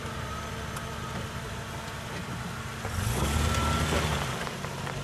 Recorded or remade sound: recorded